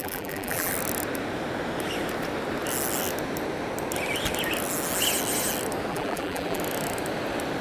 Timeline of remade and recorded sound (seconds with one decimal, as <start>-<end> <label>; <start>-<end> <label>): 0.0-0.7 remade; 0.7-5.9 recorded; 5.9-6.6 remade; 6.6-7.6 recorded